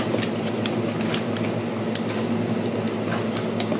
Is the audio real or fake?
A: real